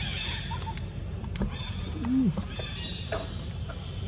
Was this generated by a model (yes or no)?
yes